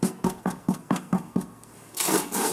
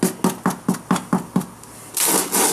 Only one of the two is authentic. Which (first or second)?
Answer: second